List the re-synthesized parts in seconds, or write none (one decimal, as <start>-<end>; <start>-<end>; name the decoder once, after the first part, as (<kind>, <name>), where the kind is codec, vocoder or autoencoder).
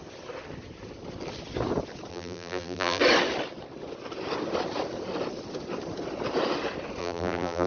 2.1-3.0 (vocoder, BigVGAN v2); 7.0-7.7